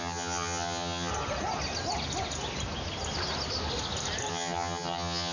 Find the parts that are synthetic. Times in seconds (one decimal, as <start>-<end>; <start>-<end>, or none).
0.0-1.1; 4.3-5.3